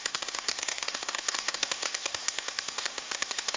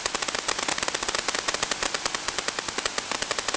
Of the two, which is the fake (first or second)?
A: first